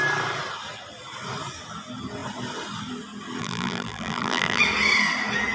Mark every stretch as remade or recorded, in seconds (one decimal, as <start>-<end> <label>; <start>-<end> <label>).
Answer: 0.0-3.4 recorded; 3.4-4.6 remade; 4.6-5.5 recorded